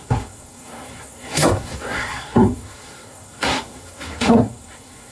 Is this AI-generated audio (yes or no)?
yes